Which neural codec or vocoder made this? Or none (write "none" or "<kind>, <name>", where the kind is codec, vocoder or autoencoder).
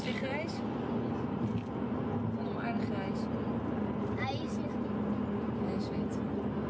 none